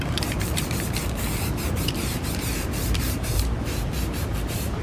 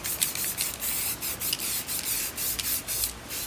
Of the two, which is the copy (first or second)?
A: first